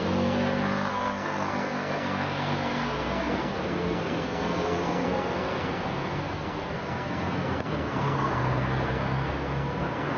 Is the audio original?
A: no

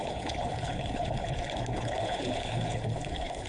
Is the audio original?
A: no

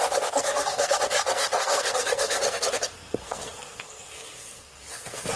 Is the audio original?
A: no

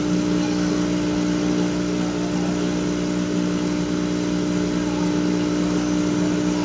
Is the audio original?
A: yes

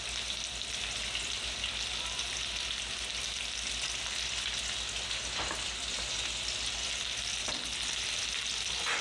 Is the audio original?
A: yes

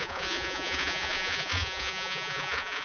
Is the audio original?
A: no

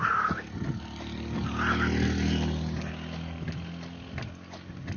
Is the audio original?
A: yes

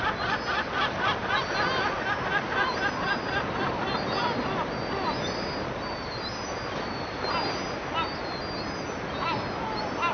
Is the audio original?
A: yes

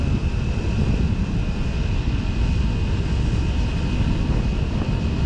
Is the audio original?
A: yes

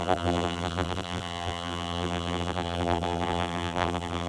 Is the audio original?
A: no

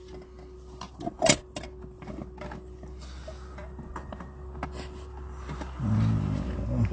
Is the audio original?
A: yes